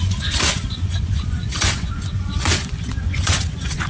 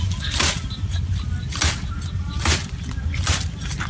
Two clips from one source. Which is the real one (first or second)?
second